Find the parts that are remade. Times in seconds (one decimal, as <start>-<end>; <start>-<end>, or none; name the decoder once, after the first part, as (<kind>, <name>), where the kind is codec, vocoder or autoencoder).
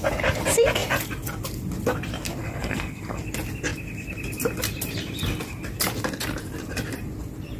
2.4-3.2 (codec, SNAC)